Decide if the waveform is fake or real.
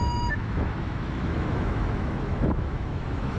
fake